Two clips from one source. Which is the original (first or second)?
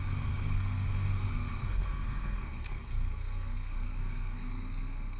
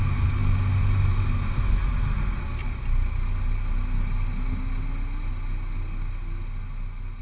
second